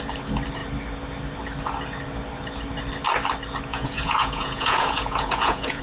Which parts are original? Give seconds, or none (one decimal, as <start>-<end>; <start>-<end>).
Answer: 0.0-3.7